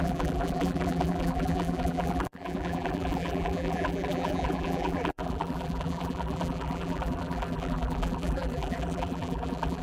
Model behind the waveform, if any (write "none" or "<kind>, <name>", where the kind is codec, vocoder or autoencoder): vocoder, BigVGAN v2